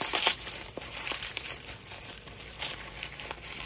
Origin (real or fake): fake